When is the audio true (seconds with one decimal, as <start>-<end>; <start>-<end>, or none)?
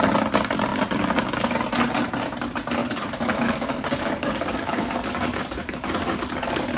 0.0-2.8